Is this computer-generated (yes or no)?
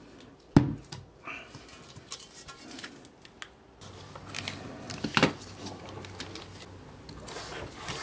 no